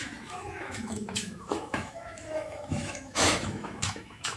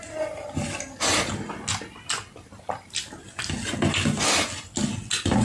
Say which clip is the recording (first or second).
second